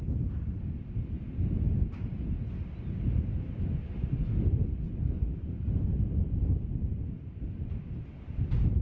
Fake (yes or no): no